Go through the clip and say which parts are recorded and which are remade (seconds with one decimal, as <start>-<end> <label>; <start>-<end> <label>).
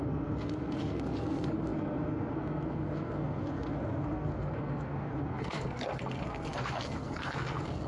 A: 0.0-7.9 remade